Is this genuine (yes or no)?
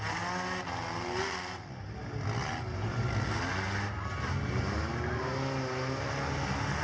yes